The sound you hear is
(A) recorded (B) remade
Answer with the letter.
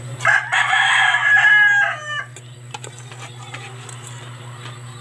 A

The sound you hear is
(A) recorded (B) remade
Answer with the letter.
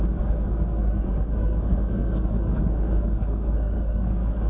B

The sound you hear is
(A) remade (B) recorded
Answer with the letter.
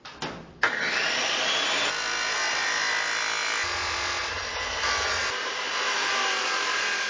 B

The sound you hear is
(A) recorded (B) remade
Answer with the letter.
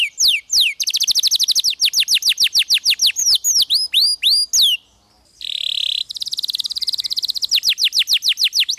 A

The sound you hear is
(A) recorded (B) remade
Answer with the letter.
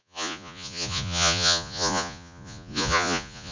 B